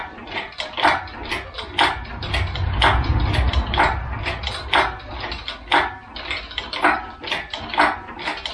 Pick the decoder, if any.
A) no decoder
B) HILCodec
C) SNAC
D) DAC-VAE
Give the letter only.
A